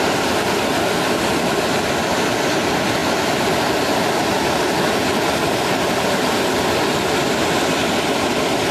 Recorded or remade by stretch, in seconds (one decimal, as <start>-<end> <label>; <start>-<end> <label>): 0.0-8.7 recorded